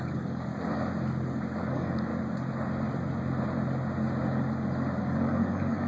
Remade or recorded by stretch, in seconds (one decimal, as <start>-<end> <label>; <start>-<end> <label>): 0.0-0.5 remade; 0.5-1.6 recorded; 1.6-2.1 remade; 2.1-5.0 recorded; 5.0-5.9 remade